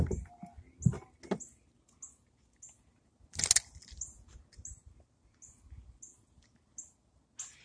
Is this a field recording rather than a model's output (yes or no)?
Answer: yes